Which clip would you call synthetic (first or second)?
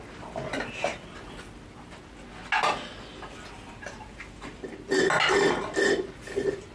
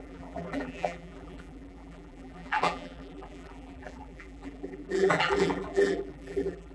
second